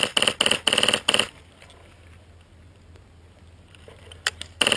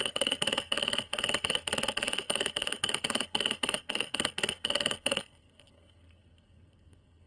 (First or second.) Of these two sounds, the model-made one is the second